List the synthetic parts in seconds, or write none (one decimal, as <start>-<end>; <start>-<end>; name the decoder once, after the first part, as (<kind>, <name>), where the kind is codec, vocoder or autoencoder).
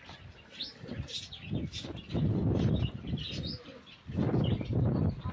none